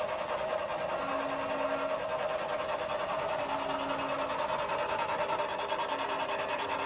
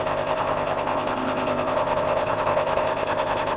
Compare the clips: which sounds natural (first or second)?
first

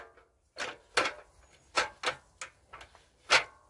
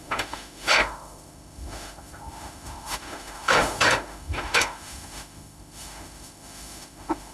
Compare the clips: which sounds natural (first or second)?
first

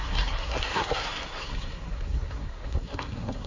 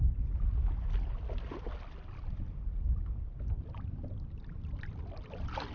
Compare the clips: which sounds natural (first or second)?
second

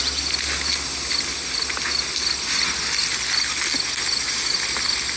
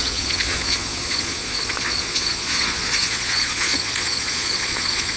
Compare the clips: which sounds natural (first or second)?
first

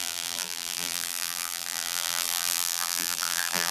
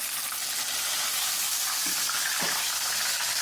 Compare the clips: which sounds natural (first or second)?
second